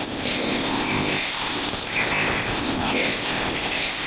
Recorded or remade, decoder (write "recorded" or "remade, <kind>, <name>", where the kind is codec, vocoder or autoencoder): remade, codec, ZipCodec